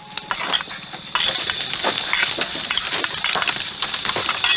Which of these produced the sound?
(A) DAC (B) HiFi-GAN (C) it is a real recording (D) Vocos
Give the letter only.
C